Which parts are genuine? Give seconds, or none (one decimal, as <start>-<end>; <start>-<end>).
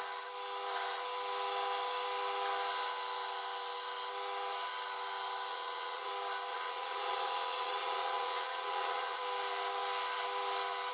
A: 0.0-5.5; 6.1-6.5; 9.2-10.9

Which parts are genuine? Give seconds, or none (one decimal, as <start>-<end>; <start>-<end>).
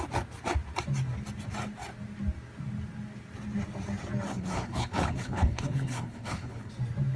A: 0.0-4.3; 6.7-7.2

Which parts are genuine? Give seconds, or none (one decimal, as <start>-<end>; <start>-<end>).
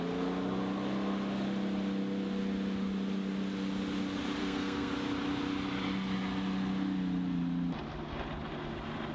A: 0.0-4.4; 4.9-9.1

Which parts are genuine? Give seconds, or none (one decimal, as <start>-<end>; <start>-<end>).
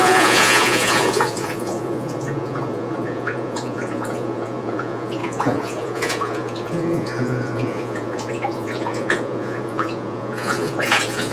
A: none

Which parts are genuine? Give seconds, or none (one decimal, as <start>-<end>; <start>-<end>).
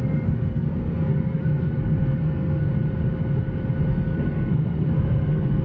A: 2.7-3.9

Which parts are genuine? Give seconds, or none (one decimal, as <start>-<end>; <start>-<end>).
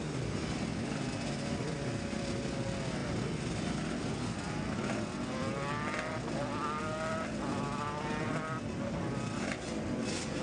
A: 0.0-10.4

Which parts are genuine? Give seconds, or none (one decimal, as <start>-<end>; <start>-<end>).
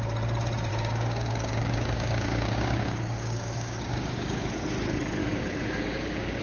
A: 0.0-0.7; 4.5-5.2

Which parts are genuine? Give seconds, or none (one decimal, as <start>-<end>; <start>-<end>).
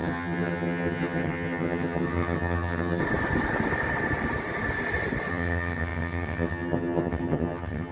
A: 3.0-5.3